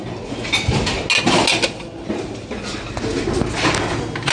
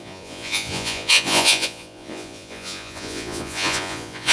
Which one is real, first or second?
first